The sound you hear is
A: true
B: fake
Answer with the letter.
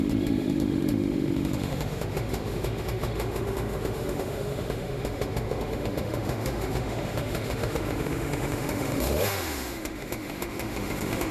B